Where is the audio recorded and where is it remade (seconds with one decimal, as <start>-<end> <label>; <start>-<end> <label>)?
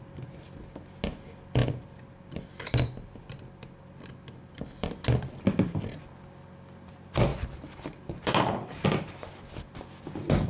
0.0-1.6 recorded; 1.6-4.9 remade; 4.9-7.3 recorded; 7.3-8.3 remade; 8.3-10.5 recorded